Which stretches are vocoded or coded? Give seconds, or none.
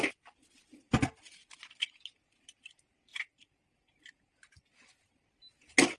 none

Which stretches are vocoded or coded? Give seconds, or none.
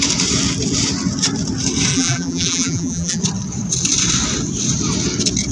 1.9-3.2 (vocoder, BigVGAN v2)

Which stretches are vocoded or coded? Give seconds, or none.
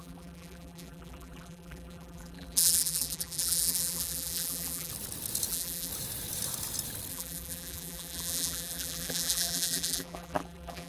0.0-4.9 (vocoder, BigVGAN v2); 5.5-5.9; 7.1-10.9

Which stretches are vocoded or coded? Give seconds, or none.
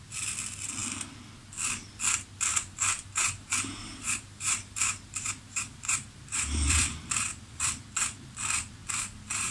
2.5-7.7 (vocoder, BigVGAN v2); 8.8-9.5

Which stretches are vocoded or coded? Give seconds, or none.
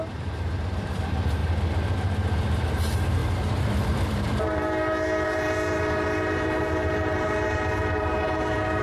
0.0-1.4 (vocoder, BigVGAN v2); 2.7-8.8